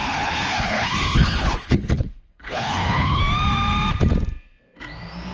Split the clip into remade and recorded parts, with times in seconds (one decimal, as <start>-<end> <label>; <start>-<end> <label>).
0.0-3.2 remade; 3.2-5.3 recorded